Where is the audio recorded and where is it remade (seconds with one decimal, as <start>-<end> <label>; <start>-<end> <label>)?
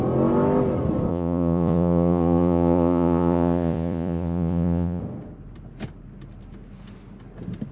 0.0-1.1 recorded; 1.1-5.0 remade; 5.0-7.7 recorded